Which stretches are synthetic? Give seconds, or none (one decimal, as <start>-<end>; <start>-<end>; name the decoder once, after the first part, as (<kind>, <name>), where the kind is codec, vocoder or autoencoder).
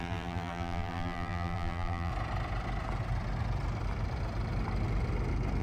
0.0-2.1 (vocoder, BigVGAN v2)